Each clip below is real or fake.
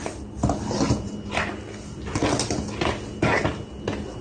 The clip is real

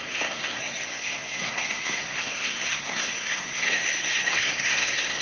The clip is fake